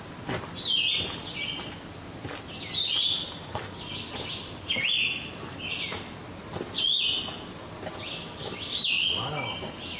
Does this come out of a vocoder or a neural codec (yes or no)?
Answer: no